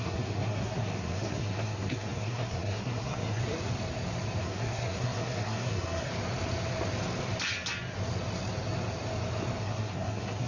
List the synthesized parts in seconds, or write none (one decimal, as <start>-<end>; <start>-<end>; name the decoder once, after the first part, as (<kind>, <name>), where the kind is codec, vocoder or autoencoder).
0.0-3.4 (codec, SNAC); 4.4-6.1; 9.6-10.5